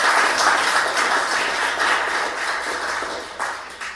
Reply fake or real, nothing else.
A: real